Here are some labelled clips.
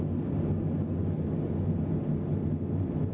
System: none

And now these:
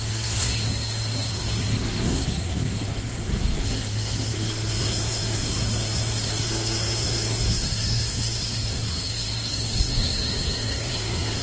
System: codec, SNAC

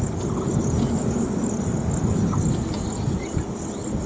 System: none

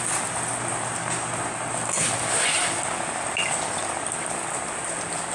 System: none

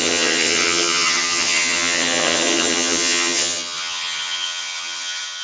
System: vocoder, HiFi-GAN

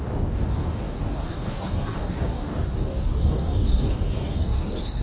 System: codec, DAC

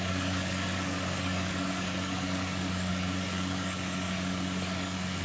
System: codec, DAC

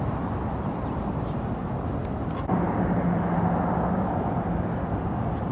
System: none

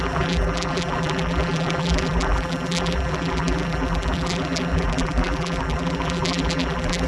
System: vocoder, BigVGAN v2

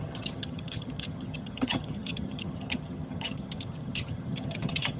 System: vocoder, HiFi-GAN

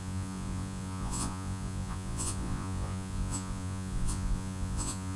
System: vocoder, Vocos